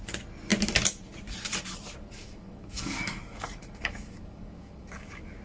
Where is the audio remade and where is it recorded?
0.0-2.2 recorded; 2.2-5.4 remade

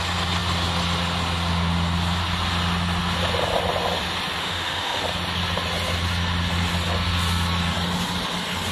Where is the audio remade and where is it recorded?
0.0-4.4 recorded; 4.4-5.0 remade; 5.0-8.7 recorded

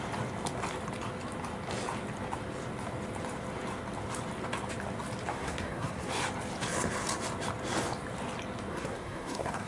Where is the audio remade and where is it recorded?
0.0-5.3 recorded; 5.3-6.1 remade; 6.1-8.7 recorded; 8.7-9.7 remade

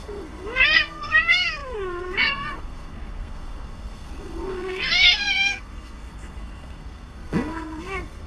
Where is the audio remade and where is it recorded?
0.0-8.3 remade

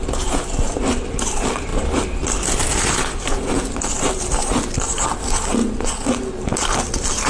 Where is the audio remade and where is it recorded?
0.0-7.3 recorded

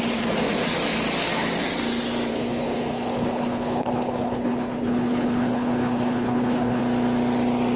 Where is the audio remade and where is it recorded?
0.0-2.3 recorded; 2.3-6.8 remade; 6.8-7.8 recorded